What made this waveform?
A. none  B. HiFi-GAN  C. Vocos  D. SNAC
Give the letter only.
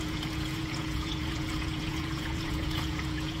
C